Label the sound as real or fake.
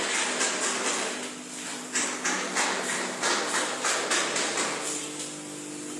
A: real